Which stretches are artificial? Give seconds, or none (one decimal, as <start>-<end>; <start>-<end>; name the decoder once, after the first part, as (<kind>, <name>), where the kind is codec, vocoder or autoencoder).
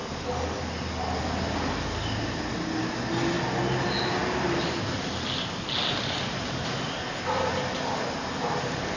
none